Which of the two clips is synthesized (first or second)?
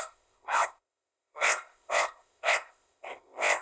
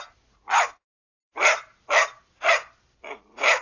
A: first